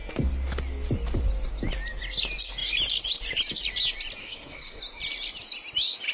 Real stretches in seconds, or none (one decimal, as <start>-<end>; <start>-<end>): 0.0-4.2; 4.8-6.1